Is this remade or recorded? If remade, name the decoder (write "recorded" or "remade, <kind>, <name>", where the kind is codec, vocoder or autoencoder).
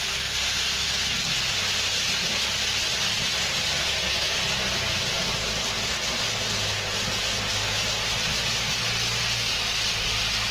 recorded